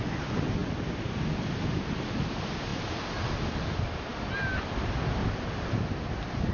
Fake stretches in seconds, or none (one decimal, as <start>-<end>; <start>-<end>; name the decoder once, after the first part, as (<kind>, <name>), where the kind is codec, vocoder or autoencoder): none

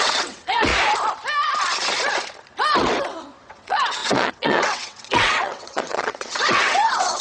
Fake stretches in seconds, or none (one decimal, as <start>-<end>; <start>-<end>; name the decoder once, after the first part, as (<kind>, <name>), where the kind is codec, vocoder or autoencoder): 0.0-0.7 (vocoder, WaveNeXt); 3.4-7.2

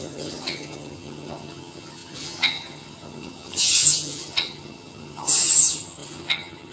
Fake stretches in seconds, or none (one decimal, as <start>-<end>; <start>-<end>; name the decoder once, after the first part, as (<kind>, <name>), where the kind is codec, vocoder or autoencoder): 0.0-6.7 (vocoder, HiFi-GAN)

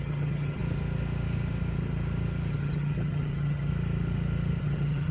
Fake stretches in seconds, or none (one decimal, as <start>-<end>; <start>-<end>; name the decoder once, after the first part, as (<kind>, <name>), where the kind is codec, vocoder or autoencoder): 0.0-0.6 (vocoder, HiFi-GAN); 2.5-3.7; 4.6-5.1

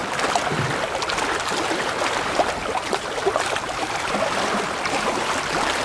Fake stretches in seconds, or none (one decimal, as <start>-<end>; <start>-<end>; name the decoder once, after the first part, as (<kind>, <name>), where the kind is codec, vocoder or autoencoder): 2.0-5.8 (vocoder, BigVGAN v2)